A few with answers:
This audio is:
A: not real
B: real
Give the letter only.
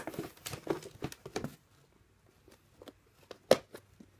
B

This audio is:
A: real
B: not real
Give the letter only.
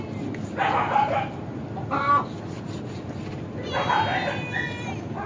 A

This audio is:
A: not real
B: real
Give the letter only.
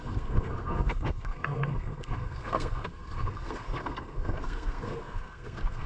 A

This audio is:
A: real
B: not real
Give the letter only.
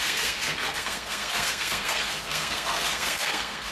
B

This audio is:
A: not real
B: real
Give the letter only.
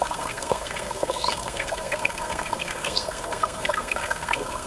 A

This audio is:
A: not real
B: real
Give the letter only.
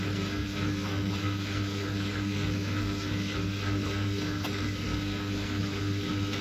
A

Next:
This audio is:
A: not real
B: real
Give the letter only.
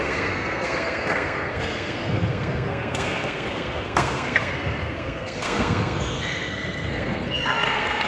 A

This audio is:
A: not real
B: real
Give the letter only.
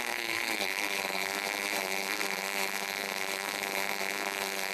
A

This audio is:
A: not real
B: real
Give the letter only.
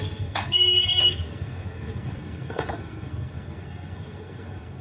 A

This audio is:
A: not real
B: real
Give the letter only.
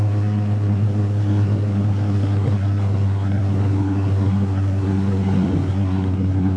A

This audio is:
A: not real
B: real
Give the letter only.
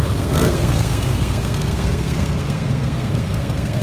A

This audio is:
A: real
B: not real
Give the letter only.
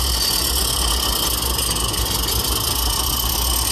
A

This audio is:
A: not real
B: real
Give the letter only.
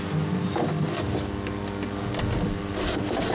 B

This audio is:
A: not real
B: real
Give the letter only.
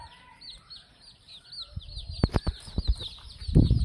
B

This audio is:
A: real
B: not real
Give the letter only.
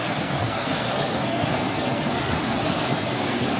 B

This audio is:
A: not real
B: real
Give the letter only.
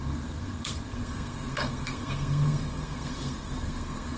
A